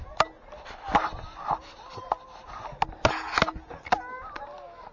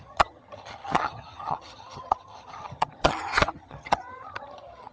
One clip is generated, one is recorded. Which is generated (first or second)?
second